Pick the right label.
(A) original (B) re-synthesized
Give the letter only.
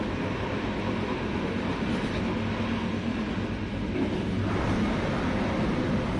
A